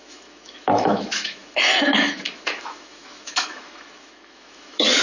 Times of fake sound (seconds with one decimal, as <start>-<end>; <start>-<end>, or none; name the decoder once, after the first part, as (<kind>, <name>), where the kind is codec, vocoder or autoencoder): 0.0-5.0 (autoencoder, DAC-VAE)